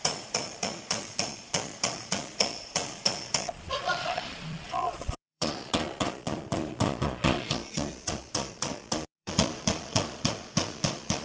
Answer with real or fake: fake